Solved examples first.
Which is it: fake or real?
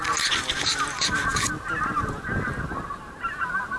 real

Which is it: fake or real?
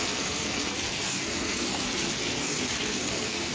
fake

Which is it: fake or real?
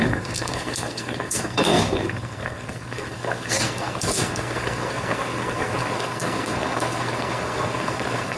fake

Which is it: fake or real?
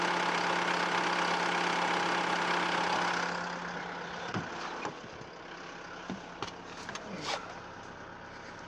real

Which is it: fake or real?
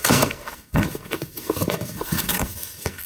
fake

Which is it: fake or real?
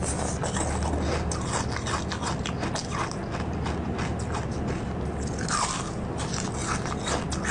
real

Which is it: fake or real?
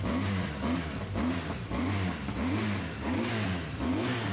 real